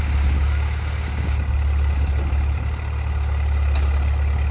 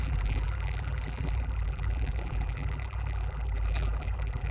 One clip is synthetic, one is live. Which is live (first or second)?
first